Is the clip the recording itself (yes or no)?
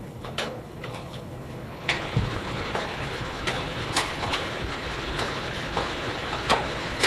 no